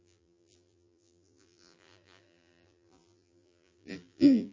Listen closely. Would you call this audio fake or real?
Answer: fake